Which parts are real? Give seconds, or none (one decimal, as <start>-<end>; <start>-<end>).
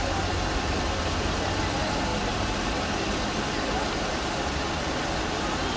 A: 0.0-5.8